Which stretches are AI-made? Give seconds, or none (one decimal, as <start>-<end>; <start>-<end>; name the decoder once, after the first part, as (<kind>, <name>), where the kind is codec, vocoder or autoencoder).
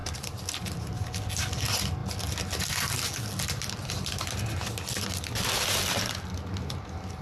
0.0-1.3 (vocoder, BigVGAN v2)